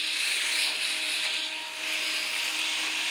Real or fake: fake